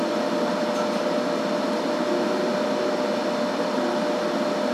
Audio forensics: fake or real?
real